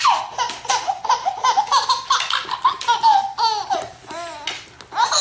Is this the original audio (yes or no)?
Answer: yes